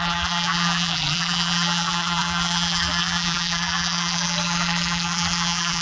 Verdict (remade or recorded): remade